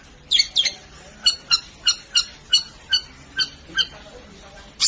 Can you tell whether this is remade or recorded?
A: recorded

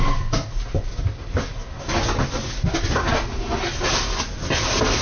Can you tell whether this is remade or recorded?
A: recorded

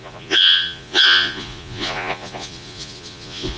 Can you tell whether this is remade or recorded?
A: remade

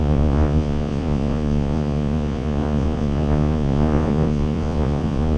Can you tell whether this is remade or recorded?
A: remade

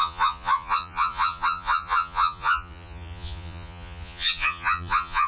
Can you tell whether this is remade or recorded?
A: remade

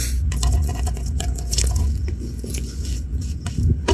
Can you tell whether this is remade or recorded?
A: remade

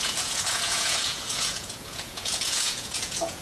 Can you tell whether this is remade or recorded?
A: remade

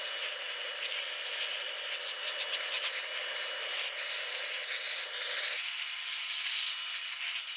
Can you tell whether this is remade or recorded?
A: recorded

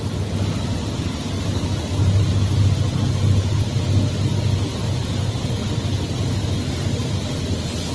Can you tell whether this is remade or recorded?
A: recorded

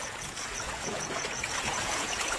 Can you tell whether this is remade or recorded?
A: remade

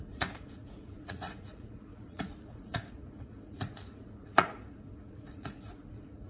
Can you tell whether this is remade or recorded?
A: remade